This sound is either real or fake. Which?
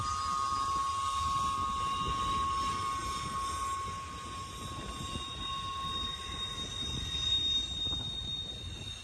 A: real